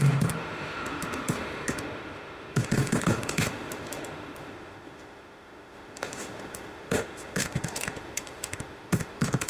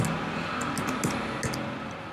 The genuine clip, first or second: second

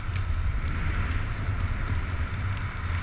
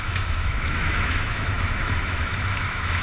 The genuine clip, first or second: first